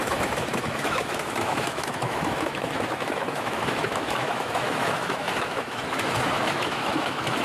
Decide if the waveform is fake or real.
fake